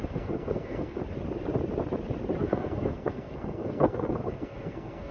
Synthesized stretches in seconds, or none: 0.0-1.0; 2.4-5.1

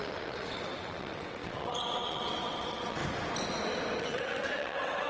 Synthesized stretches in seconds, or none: 0.0-3.0; 4.0-5.1

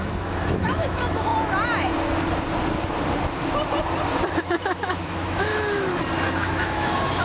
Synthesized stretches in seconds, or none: 0.0-1.3; 4.4-5.5; 6.3-7.2